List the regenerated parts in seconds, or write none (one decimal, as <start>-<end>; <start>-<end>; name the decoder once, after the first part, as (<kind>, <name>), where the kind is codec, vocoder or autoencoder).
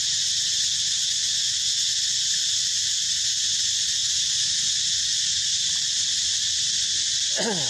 none